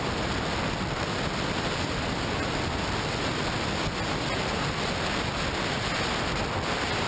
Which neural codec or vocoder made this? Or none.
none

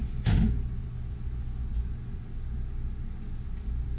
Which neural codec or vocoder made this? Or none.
none